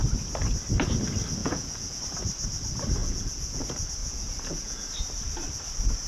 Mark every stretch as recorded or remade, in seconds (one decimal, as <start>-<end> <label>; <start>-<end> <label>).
0.0-1.4 recorded; 1.4-2.0 remade; 2.0-3.0 recorded; 3.0-3.6 remade; 3.6-4.0 recorded; 4.0-4.9 remade; 4.9-6.1 recorded